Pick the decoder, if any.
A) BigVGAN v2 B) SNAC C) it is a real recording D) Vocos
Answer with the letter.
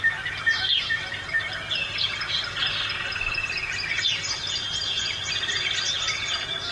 C